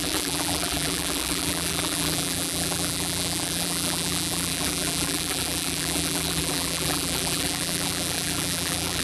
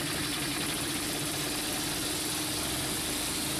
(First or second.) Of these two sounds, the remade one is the first